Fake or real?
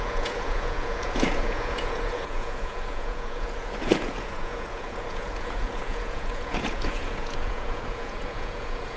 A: fake